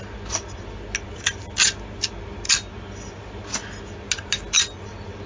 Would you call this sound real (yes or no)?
yes